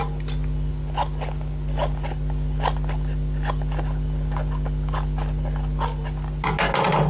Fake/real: real